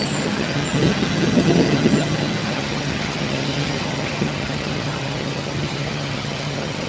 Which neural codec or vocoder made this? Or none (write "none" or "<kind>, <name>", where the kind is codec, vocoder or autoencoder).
vocoder, HiFi-GAN